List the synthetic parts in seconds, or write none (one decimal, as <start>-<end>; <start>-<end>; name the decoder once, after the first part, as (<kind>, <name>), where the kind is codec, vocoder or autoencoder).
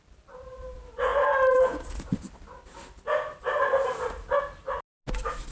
none